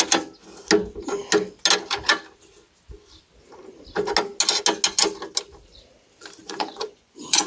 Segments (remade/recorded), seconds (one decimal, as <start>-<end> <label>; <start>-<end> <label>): 0.0-6.4 recorded; 6.4-7.5 remade